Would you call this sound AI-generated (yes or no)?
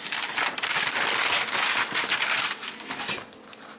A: no